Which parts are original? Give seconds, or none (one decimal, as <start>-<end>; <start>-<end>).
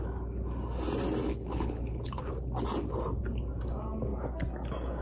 0.0-1.3; 2.3-5.0